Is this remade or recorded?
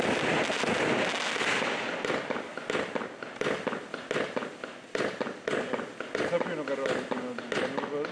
recorded